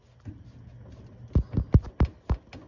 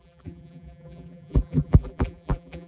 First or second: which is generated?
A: second